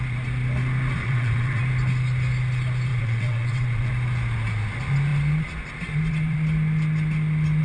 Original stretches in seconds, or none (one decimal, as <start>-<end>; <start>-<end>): 0.0-1.0; 1.6-2.9; 3.9-7.6